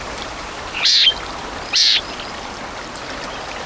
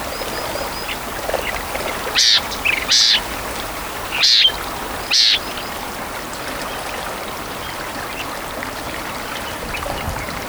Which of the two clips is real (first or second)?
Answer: second